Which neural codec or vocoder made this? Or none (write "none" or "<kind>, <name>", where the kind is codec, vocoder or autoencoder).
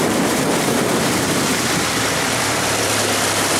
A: vocoder, BigVGAN v2